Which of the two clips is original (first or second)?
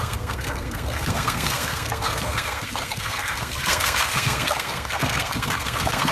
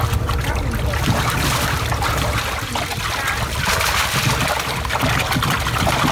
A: second